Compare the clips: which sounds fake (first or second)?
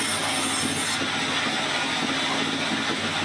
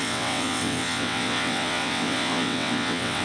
second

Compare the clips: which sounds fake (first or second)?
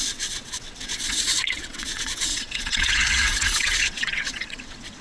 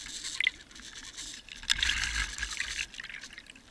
first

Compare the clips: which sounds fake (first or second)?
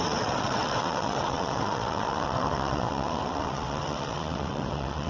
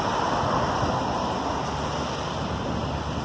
first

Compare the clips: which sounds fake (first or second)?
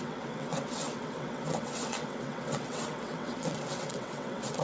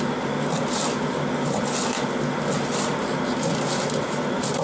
first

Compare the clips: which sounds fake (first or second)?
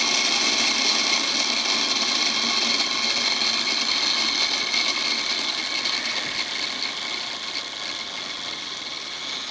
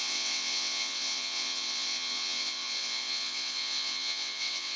second